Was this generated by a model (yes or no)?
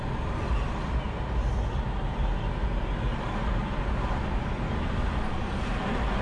no